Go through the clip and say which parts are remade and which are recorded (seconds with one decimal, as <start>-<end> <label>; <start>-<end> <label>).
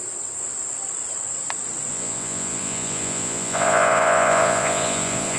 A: 0.0-1.9 recorded; 1.9-5.4 remade